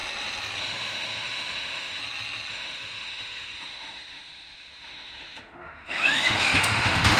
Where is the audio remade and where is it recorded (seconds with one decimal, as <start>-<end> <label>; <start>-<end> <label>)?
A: 0.0-0.6 recorded; 0.6-2.0 remade; 2.0-2.5 recorded; 2.5-7.2 remade